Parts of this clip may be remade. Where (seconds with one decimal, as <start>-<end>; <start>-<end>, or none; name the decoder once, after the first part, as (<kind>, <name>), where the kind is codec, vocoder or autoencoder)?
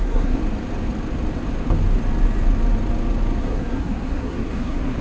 0.0-0.4 (codec, SNAC); 3.4-5.0